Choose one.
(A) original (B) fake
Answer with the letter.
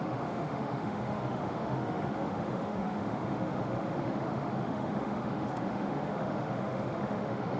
B